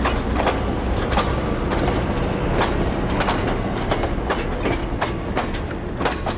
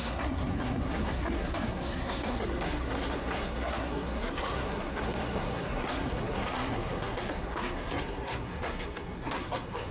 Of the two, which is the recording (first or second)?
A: first